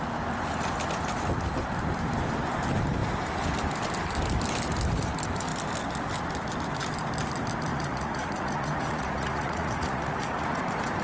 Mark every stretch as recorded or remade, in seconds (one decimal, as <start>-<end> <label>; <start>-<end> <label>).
0.0-7.7 recorded; 7.7-10.6 remade; 10.6-11.0 recorded